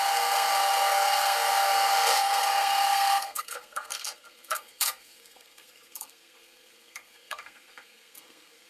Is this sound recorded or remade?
remade